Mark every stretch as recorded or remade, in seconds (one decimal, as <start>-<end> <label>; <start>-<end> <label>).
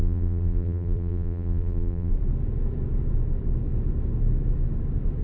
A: 0.0-2.1 remade; 2.1-5.2 recorded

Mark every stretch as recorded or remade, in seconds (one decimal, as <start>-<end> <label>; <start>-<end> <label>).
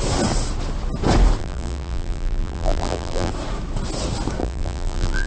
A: 0.0-1.4 recorded; 1.4-3.3 remade; 3.3-4.4 recorded; 4.4-5.3 remade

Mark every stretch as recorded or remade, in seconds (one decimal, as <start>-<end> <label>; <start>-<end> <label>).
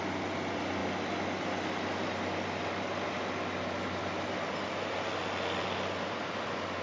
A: 0.0-6.8 recorded